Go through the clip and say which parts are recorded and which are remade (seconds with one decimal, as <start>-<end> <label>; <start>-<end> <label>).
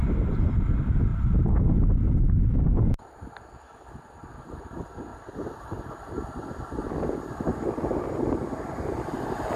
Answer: 0.0-9.6 recorded